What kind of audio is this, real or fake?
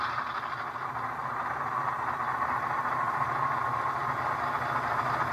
real